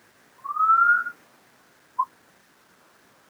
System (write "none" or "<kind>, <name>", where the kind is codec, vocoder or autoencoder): none